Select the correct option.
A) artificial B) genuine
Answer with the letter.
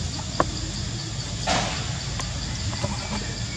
B